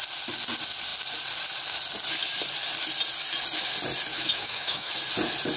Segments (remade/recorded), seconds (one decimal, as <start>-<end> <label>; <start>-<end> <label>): 0.0-4.1 recorded; 4.1-4.9 remade; 4.9-5.6 recorded